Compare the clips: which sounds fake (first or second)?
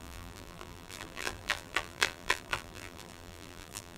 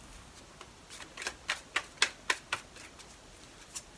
first